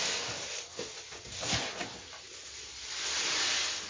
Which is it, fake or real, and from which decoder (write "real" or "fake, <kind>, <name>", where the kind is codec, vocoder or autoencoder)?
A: real